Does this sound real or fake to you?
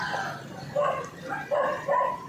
real